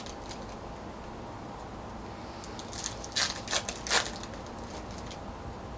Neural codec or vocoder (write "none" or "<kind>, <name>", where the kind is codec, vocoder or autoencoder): none